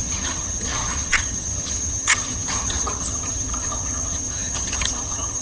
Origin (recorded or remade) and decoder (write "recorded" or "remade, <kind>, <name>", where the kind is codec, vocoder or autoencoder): remade, vocoder, HiFi-GAN